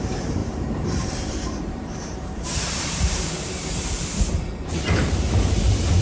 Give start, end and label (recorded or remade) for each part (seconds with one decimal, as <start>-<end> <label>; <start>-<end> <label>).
0.0-6.0 remade